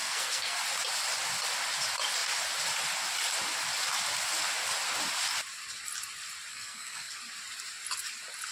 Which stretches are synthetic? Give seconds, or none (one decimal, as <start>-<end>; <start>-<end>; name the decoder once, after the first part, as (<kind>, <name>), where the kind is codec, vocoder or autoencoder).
0.0-0.6 (codec, SNAC); 6.5-7.1